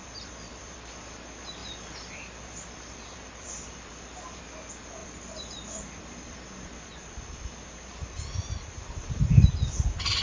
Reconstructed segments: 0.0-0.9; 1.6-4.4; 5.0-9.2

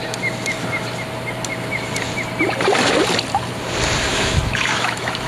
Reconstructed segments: 4.1-5.3

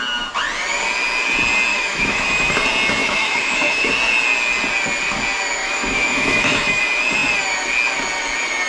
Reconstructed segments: 1.7-2.5; 3.0-3.9; 5.6-6.8

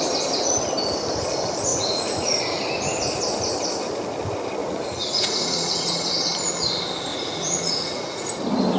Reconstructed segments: 1.7-2.4; 4.6-6.1; 7.1-8.4

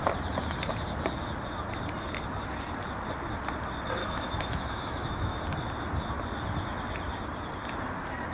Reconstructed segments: 4.0-5.4

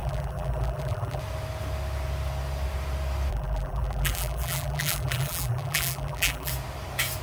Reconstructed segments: 0.0-1.2; 3.3-6.5